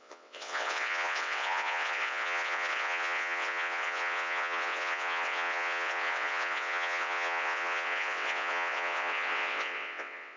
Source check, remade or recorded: remade